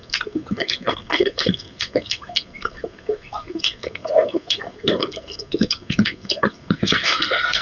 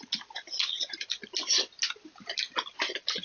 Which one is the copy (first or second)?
first